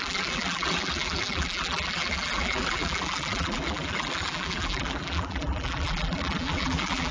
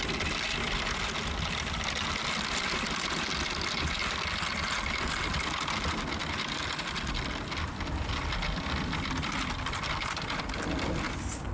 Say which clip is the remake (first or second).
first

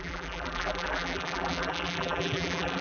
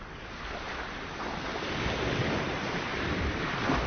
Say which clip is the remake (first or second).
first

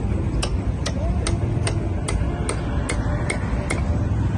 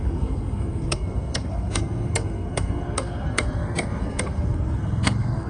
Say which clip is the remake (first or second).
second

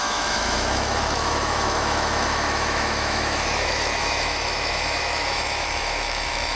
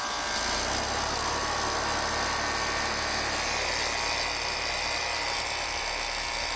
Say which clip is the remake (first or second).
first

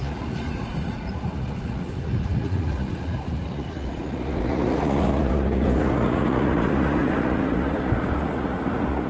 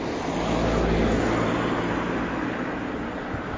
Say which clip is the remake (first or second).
first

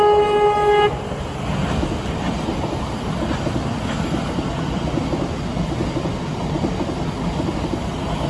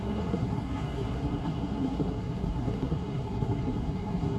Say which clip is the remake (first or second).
second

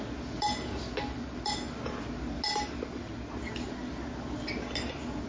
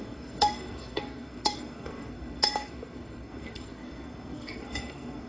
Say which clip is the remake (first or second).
second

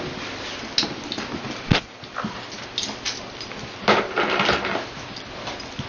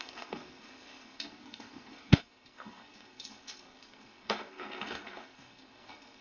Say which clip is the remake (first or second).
second